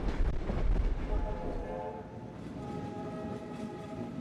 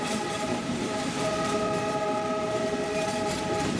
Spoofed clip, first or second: second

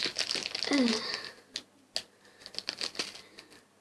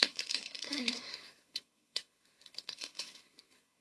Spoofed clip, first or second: second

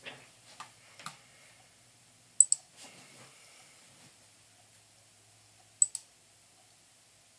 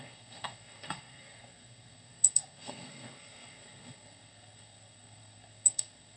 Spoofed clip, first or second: second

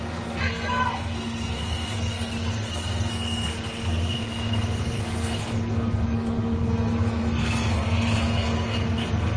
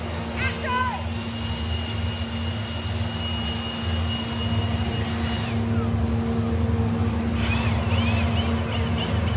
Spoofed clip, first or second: first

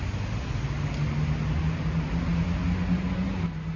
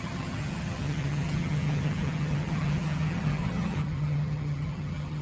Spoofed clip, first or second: second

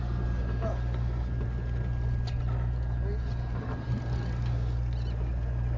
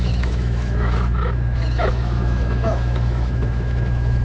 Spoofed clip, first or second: second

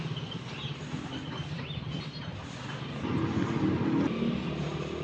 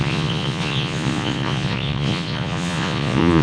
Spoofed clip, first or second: second